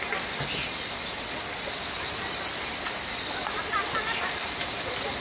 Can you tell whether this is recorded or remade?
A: recorded